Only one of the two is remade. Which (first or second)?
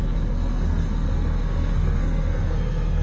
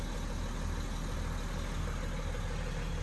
first